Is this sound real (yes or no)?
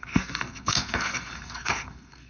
no